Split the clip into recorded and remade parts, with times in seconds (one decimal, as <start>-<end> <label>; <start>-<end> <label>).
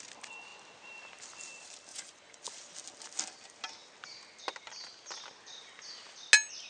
0.0-1.9 recorded; 1.9-2.4 remade; 2.4-6.7 recorded